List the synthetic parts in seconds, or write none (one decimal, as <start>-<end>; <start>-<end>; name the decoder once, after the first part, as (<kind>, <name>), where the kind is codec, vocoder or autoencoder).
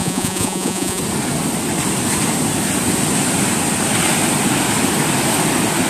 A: 0.0-1.0 (vocoder, Vocos)